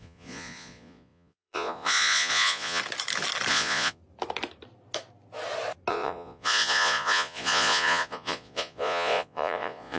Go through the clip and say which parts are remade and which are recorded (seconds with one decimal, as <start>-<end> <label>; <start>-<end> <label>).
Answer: 0.0-2.8 remade; 2.8-3.5 recorded; 3.5-4.0 remade; 4.0-5.9 recorded; 5.9-10.0 remade